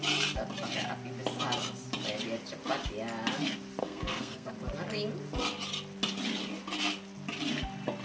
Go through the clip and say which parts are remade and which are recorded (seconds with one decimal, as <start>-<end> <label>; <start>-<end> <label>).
0.0-3.8 recorded; 3.8-4.5 remade; 4.5-8.0 recorded